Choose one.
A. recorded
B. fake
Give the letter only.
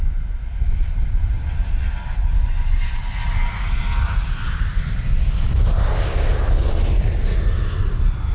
A